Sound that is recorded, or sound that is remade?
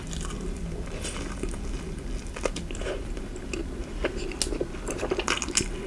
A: recorded